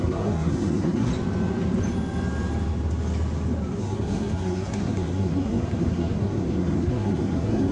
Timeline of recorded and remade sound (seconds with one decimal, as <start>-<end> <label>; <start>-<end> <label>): 0.0-1.1 remade; 1.1-3.8 recorded; 3.8-7.7 remade